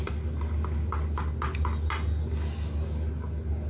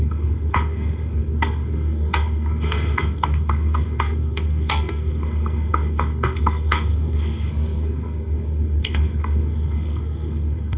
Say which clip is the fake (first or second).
second